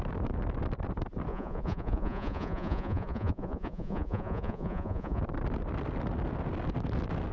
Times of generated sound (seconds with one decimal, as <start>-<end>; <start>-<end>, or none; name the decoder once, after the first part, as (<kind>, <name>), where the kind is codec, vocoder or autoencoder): 1.3-5.2 (vocoder, Vocos)